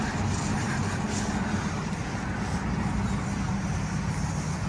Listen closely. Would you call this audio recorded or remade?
recorded